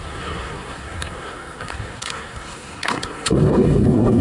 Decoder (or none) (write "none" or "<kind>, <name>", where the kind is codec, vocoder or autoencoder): codec, SNAC